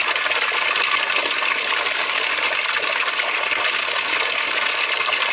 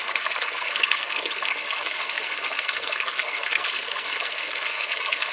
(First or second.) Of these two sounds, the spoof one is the second